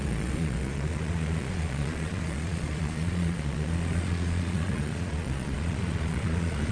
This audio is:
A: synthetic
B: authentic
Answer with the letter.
A